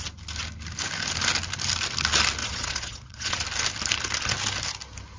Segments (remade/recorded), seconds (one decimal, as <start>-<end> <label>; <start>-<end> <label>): 0.0-2.4 recorded; 2.4-3.4 remade; 3.4-5.2 recorded